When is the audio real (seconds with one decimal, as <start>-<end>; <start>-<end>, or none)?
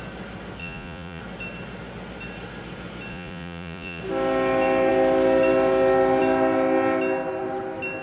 0.0-0.6; 1.2-3.1; 4.0-8.0